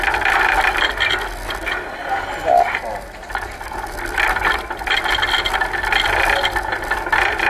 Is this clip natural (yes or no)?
yes